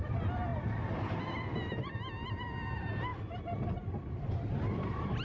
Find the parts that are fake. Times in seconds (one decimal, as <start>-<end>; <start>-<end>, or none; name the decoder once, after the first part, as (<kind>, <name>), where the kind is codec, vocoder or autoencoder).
none